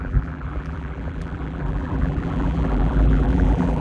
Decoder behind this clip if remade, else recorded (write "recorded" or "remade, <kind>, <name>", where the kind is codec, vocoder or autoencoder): remade, vocoder, BigVGAN v2